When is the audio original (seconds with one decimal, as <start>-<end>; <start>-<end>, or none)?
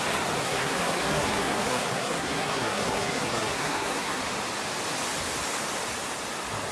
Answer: 0.0-0.4; 4.2-6.7